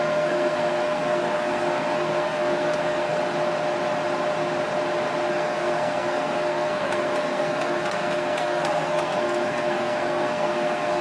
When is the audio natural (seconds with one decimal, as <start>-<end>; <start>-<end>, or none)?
3.2-5.3